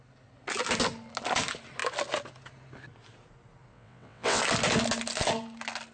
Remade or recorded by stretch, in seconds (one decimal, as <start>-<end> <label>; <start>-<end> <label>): 0.0-3.7 recorded; 3.7-4.4 remade; 4.4-5.9 recorded